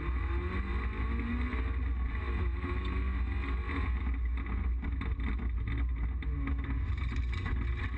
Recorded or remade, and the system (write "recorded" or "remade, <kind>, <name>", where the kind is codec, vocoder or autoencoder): recorded